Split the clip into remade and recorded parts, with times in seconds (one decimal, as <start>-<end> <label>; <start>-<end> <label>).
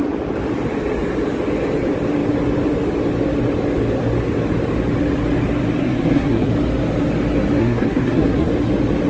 0.0-5.8 recorded; 5.8-6.5 remade; 6.5-7.6 recorded; 7.6-8.5 remade; 8.5-9.1 recorded